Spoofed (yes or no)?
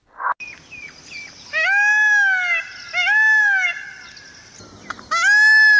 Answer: no